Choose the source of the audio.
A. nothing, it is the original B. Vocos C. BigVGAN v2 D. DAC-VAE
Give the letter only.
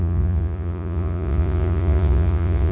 B